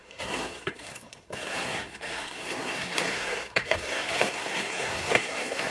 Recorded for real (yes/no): no